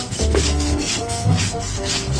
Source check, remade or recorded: remade